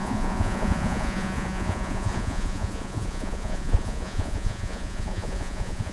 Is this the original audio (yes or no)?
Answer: no